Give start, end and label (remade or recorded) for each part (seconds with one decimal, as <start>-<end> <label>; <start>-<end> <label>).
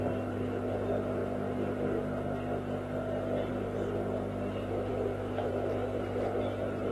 0.0-4.9 recorded; 4.9-5.5 remade; 5.5-6.9 recorded